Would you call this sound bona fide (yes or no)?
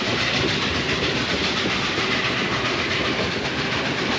yes